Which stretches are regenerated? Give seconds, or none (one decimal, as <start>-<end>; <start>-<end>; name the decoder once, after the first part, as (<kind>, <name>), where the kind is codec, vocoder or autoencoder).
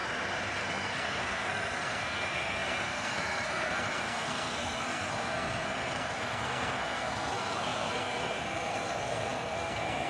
0.6-10.1 (codec, SNAC)